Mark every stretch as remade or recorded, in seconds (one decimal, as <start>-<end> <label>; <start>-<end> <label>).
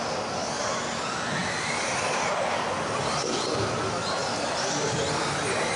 0.0-5.8 recorded